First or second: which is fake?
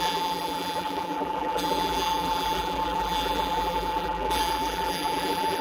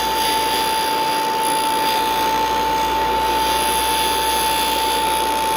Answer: first